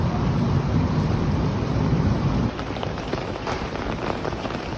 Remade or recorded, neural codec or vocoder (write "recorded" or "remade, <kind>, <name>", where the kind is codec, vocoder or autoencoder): remade, vocoder, BigVGAN v2